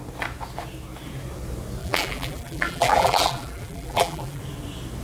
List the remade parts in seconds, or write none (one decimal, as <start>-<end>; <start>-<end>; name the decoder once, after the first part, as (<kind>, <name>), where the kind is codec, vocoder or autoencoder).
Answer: 1.8-4.4 (vocoder, BigVGAN v2)